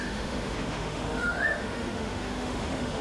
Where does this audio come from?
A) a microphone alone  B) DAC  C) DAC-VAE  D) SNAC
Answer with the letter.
C